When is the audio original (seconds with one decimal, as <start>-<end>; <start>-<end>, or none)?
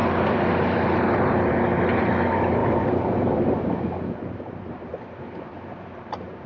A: 0.0-2.6; 3.4-4.2; 4.9-5.5